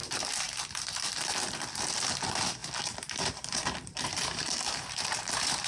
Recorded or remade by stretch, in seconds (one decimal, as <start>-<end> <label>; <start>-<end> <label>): 0.0-2.6 recorded; 2.6-5.7 remade